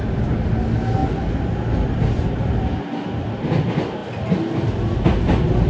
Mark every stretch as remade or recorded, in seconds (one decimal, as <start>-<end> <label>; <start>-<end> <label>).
0.0-5.7 recorded